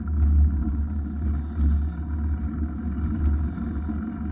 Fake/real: real